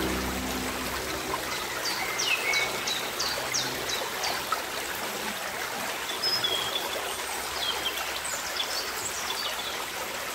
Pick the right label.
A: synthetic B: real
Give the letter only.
B